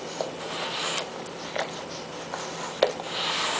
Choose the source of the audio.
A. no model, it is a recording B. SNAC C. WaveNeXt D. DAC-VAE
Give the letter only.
A